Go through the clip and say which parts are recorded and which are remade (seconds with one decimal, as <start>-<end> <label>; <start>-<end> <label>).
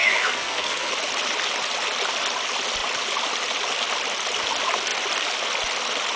0.0-0.9 remade; 0.9-6.2 recorded